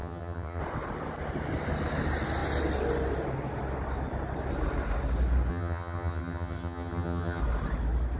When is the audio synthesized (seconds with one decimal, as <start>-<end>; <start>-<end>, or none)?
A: 0.0-0.6; 5.5-7.4